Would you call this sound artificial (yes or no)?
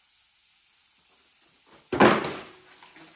no